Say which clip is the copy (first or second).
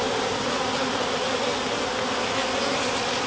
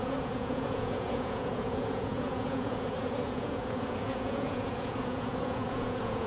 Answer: second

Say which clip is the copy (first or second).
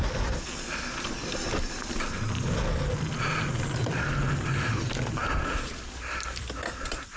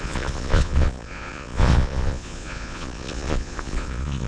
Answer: second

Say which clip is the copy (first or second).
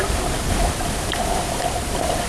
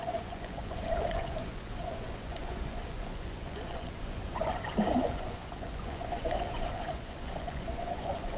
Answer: second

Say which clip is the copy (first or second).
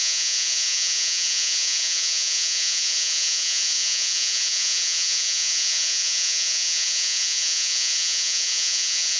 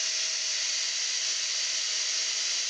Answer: first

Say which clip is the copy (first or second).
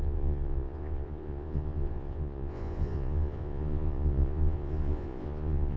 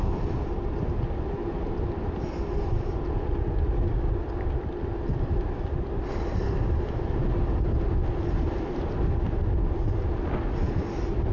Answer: first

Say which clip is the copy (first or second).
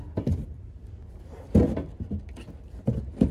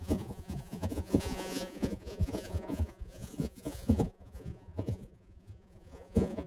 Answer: second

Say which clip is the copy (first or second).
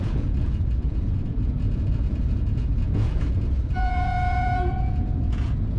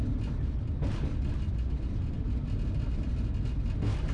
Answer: first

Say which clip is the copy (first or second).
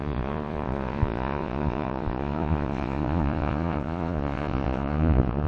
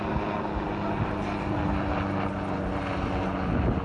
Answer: first